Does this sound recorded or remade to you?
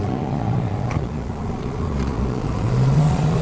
remade